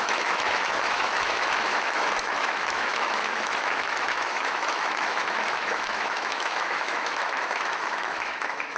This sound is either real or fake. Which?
fake